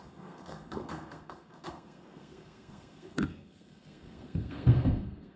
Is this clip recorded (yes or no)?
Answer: no